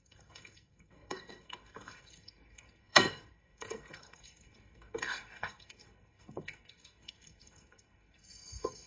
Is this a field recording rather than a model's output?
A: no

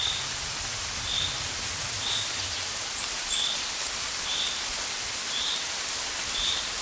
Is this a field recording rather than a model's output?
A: yes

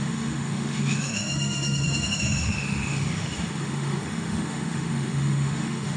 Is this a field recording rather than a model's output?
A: no